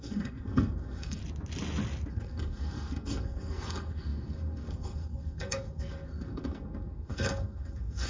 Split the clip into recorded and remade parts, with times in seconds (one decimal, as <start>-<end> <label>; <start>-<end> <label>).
0.0-1.2 remade; 1.2-2.1 recorded; 2.1-8.1 remade